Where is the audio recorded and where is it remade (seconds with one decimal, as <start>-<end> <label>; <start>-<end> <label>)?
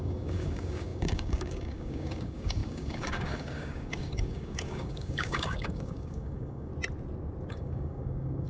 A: 0.0-6.7 remade; 6.7-7.5 recorded; 7.5-8.5 remade